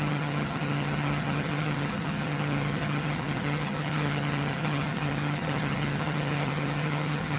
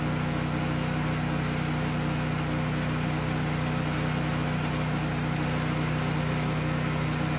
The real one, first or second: second